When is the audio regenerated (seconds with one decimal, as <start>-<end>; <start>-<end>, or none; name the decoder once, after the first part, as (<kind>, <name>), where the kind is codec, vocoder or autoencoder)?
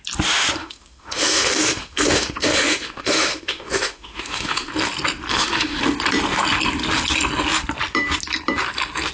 0.6-4.7 (autoencoder, DAC-VAE); 5.3-5.8